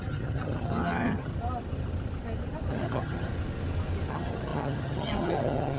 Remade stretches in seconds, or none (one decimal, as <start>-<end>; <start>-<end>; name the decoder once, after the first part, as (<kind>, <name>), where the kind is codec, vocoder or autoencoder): 0.0-1.3 (vocoder, HiFi-GAN); 2.7-3.3; 4.1-5.8